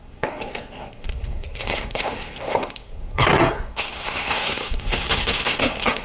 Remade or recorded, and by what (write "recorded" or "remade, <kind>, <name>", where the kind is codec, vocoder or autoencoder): remade, codec, SNAC